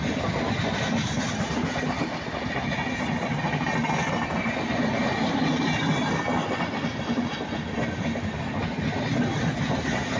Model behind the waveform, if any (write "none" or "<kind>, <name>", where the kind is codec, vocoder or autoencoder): none